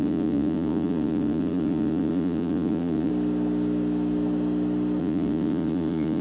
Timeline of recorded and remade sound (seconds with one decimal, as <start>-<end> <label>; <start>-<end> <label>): 0.0-3.1 remade; 3.1-5.0 recorded; 5.0-6.2 remade